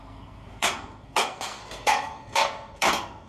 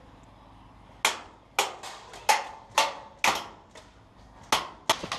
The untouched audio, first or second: second